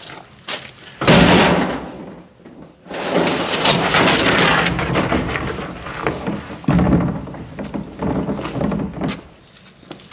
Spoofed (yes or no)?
no